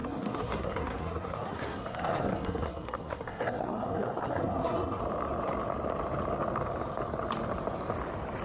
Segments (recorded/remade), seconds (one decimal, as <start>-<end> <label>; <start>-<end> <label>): 0.0-5.0 remade; 5.0-8.4 recorded